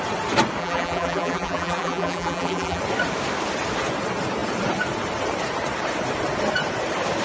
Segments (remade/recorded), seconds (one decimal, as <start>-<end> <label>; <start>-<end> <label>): 0.0-0.6 recorded; 0.6-2.8 remade; 2.8-7.2 recorded